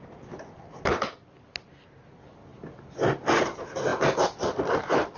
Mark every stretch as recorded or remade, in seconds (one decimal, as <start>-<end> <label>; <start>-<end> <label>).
0.0-5.2 recorded

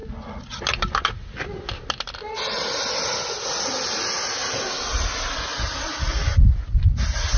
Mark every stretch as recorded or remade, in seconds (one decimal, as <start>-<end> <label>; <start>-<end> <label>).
0.0-7.4 recorded

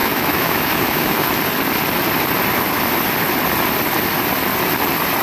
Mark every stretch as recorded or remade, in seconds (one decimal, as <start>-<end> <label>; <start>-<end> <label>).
0.0-1.3 remade; 1.3-5.2 recorded

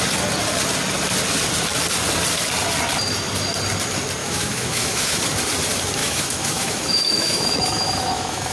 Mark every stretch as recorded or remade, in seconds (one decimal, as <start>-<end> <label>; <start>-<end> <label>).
0.0-4.2 recorded; 4.2-5.2 remade; 5.2-6.0 recorded; 6.0-8.5 remade